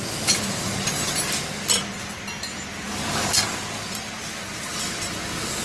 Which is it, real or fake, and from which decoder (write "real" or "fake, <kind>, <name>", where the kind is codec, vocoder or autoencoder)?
real